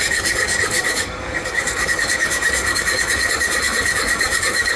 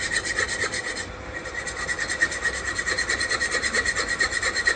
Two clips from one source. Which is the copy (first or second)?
first